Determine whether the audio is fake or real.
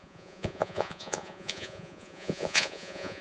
fake